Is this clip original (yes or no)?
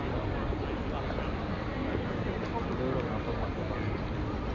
yes